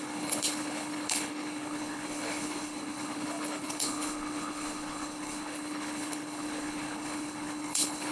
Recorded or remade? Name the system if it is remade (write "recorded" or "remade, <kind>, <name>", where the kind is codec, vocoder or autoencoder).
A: remade, codec, HILCodec